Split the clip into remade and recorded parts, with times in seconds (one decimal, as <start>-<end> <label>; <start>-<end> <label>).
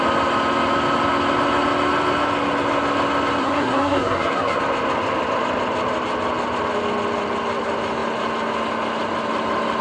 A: 0.0-3.4 recorded; 3.4-4.6 remade; 4.6-9.8 recorded